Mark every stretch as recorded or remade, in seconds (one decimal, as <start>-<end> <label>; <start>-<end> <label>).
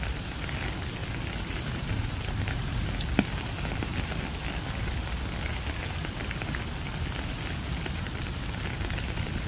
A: 0.0-9.5 recorded